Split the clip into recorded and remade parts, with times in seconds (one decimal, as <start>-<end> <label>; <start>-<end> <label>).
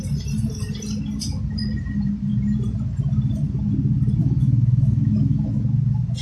0.0-4.2 recorded; 4.2-5.6 remade; 5.6-6.2 recorded